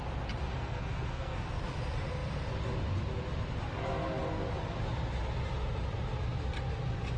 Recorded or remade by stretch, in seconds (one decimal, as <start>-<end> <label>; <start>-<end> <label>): 0.0-0.5 recorded; 0.5-1.6 remade; 1.6-7.2 recorded